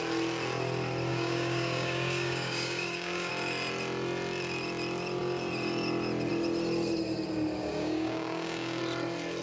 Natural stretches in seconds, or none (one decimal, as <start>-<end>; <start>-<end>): 0.0-1.1; 3.3-7.6; 8.8-9.4